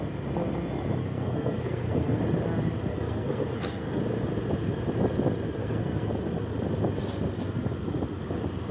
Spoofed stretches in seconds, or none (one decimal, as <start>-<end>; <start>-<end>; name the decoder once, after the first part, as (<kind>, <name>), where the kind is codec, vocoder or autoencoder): 1.0-2.2 (codec, SNAC); 2.9-4.0; 5.6-6.1